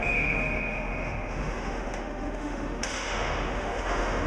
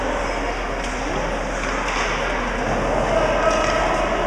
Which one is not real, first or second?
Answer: first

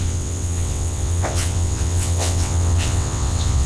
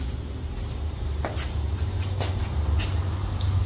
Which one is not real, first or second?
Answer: first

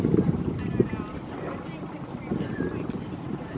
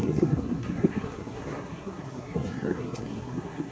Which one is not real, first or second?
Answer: second